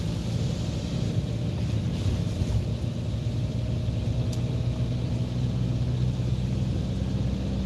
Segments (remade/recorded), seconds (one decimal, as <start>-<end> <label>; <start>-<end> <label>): 0.0-7.7 recorded